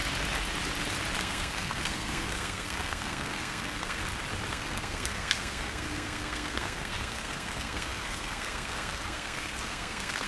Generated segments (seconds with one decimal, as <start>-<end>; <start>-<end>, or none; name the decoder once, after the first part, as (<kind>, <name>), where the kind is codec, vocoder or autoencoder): 1.2-4.0 (codec, SNAC); 4.5-10.3